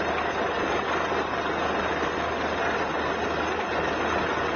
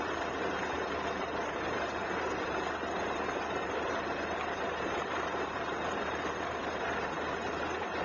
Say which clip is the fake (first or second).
second